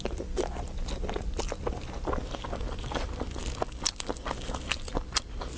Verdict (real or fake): real